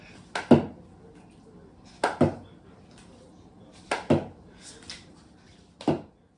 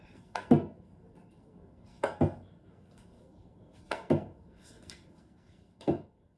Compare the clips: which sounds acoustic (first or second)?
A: first